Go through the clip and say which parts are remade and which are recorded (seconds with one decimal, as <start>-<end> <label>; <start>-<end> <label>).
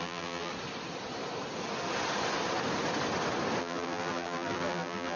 0.0-0.5 remade; 0.5-3.6 recorded; 3.6-5.2 remade